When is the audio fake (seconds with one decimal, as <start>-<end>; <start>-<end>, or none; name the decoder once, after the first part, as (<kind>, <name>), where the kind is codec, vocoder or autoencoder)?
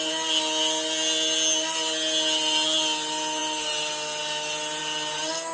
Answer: none